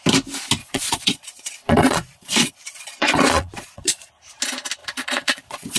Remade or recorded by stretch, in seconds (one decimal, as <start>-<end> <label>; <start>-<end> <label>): 0.0-0.6 recorded; 0.6-4.1 remade; 4.1-4.8 recorded; 4.8-5.8 remade